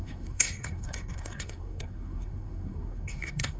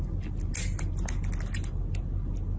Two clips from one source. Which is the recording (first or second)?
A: second